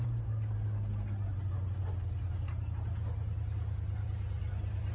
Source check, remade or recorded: recorded